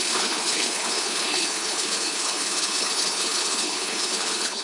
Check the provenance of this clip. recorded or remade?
remade